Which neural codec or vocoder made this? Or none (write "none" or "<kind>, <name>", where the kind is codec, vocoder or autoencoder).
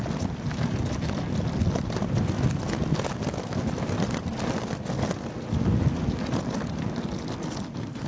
none